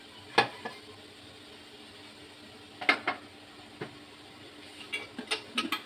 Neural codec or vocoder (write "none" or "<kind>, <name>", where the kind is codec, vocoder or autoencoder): none